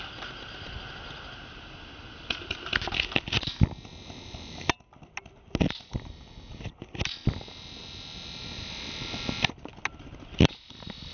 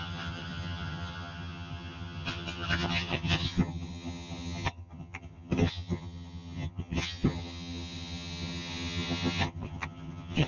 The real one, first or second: first